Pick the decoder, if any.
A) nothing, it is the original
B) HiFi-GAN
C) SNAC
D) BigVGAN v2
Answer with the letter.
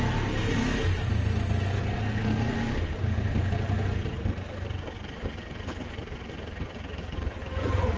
A